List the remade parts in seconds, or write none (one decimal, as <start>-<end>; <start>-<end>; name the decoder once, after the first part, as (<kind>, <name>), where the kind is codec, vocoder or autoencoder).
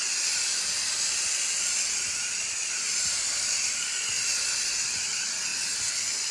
none